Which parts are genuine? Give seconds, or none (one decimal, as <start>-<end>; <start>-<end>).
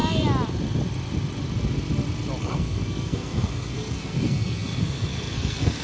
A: 0.0-2.4